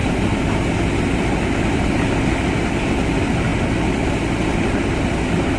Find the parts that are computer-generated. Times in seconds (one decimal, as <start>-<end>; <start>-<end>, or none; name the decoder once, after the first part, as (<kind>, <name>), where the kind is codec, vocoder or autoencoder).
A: none